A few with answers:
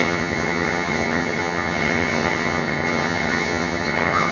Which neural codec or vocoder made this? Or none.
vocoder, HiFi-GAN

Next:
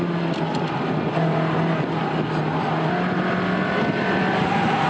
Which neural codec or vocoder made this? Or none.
none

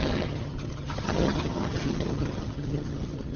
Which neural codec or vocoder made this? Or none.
vocoder, HiFi-GAN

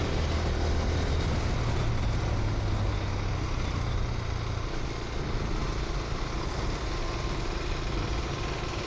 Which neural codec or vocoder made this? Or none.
none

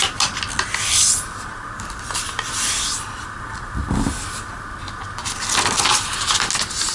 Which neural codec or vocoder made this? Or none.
none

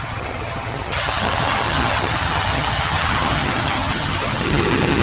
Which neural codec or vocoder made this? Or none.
vocoder, HiFi-GAN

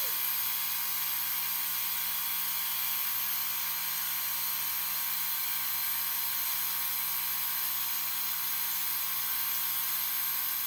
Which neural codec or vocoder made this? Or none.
none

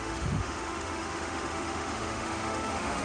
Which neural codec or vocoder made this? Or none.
autoencoder, DAC-VAE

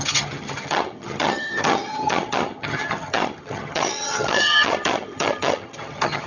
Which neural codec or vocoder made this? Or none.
vocoder, HiFi-GAN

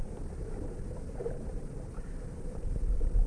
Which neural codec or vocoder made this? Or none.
none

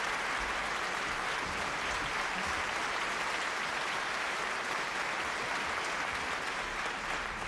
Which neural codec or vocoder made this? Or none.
none